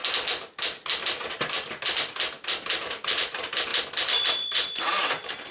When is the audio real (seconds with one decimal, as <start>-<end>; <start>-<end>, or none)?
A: 0.0-2.8; 3.7-4.8